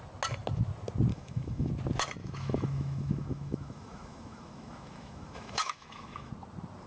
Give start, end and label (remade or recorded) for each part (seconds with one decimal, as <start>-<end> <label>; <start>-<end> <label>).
0.0-1.1 recorded; 1.1-1.7 remade; 1.7-2.2 recorded; 2.2-6.3 remade; 6.3-6.9 recorded